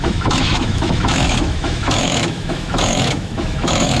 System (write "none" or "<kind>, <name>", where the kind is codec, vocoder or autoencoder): autoencoder, DAC-VAE